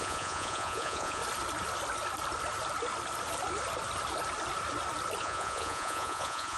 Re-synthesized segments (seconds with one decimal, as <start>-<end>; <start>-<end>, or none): 0.0-1.2; 5.2-6.6